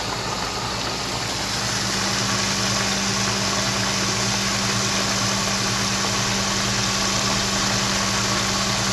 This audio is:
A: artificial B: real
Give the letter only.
B